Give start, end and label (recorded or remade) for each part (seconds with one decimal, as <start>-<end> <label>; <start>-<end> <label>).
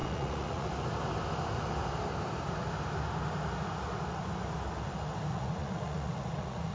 0.0-0.7 remade; 0.7-5.3 recorded; 5.3-6.7 remade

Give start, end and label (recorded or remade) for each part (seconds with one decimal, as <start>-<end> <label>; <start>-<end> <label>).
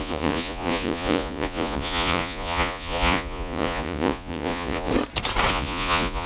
0.0-4.9 remade; 4.9-5.5 recorded; 5.5-6.3 remade